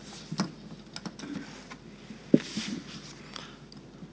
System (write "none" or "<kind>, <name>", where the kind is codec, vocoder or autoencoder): none